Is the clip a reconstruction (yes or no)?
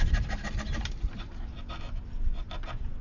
no